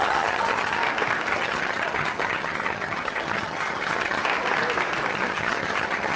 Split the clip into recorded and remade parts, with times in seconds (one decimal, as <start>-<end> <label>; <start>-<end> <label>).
0.0-0.8 remade; 0.8-1.3 recorded; 1.3-4.2 remade; 4.2-5.1 recorded; 5.1-6.2 remade

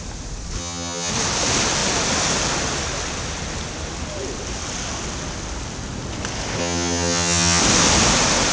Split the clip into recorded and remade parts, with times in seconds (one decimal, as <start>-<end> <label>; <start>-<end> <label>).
0.0-0.6 recorded; 0.6-1.1 remade; 1.1-6.6 recorded; 6.6-7.6 remade; 7.6-8.5 recorded

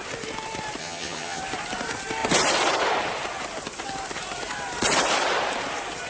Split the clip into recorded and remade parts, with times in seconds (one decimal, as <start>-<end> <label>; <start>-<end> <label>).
0.0-0.8 recorded; 0.8-1.4 remade; 1.4-6.1 recorded